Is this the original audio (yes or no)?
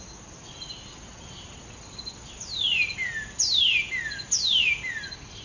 yes